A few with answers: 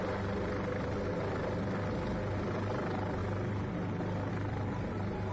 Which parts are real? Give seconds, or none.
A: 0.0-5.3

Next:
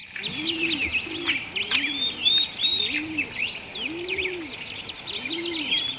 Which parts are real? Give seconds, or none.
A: 0.0-6.0